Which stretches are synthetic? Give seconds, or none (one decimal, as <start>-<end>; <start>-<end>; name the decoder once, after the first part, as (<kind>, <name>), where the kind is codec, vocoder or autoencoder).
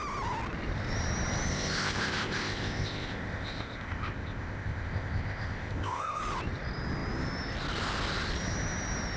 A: 1.5-6.2 (codec, ZipCodec)